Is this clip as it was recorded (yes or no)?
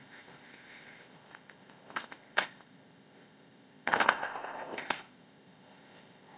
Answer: no